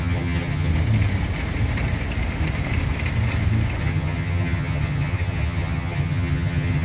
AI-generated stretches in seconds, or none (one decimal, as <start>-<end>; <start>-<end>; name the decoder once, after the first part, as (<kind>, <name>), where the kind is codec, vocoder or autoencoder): 0.0-0.7 (vocoder, HiFi-GAN); 3.8-6.8